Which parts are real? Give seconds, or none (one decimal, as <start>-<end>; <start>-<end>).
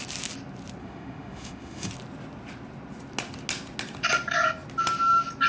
0.0-0.8; 1.9-5.5